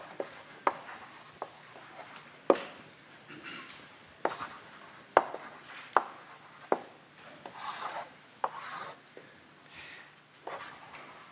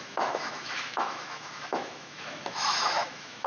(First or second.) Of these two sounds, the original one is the first